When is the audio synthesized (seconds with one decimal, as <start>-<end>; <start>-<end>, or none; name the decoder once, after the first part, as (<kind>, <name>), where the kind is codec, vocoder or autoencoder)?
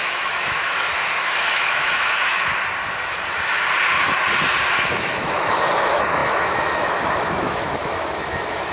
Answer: 0.0-2.5 (autoencoder, DAC-VAE); 4.9-8.7